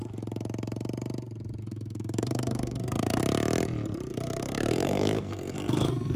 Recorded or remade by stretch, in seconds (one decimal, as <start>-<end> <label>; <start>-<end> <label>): 0.0-1.6 recorded; 1.6-3.2 remade; 3.2-4.1 recorded; 4.1-6.2 remade